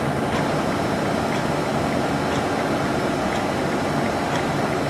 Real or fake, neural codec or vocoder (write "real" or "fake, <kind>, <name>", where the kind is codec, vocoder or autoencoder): real